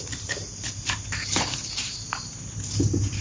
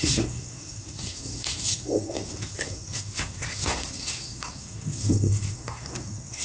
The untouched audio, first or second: first